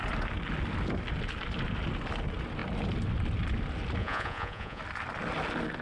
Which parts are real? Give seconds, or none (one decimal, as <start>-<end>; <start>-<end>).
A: 0.0-4.0; 4.8-5.8